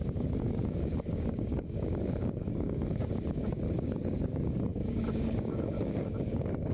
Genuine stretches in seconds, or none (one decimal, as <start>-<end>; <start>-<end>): none